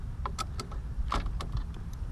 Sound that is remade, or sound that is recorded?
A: recorded